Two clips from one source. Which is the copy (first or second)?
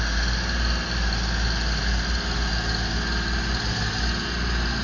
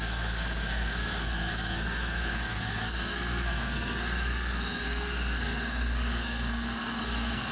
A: second